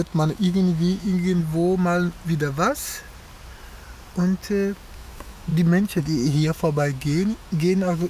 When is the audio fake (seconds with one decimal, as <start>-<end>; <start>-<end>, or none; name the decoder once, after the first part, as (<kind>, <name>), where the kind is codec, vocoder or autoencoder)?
0.0-1.4 (autoencoder, DAC-VAE); 4.9-5.5; 6.0-8.1